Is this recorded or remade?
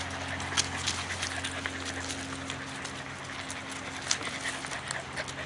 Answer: recorded